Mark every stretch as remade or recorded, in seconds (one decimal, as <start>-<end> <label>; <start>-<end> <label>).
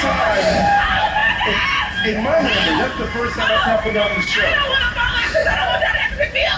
0.0-1.2 remade; 1.2-3.5 recorded; 3.5-6.6 remade